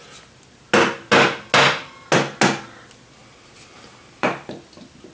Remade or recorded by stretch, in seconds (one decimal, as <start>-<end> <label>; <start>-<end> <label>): 0.0-3.2 recorded; 3.2-5.1 remade